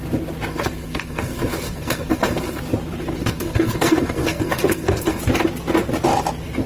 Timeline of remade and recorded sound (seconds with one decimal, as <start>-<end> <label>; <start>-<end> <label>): 0.0-0.5 recorded; 0.5-2.6 remade; 2.6-3.2 recorded; 3.2-5.2 remade; 5.2-6.7 recorded